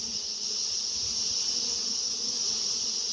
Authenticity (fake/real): real